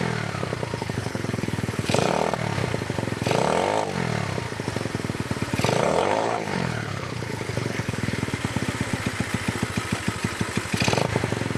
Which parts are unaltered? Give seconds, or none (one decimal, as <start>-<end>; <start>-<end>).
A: 0.0-0.8; 2.1-5.8; 8.2-11.6